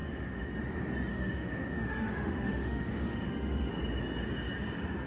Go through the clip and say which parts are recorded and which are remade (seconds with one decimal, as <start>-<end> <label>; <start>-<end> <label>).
0.0-0.5 remade; 0.5-1.1 recorded; 1.1-3.7 remade; 3.7-5.1 recorded